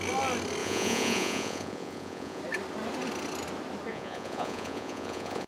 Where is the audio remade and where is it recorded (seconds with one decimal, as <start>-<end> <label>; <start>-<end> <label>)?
0.0-0.6 recorded; 0.6-2.4 remade; 2.4-3.9 recorded; 3.9-5.5 remade